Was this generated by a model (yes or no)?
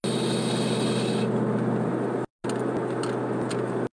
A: no